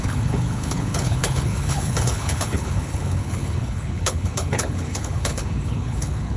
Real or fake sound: fake